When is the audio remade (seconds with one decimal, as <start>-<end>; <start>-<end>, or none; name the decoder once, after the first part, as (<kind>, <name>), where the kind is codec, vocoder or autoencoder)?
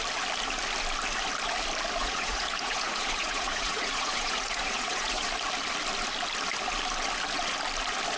2.0-5.3 (vocoder, Vocos)